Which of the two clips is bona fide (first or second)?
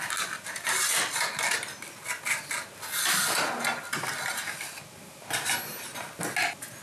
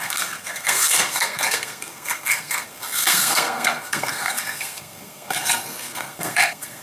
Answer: first